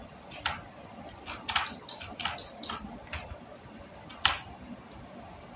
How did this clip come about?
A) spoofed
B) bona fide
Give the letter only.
B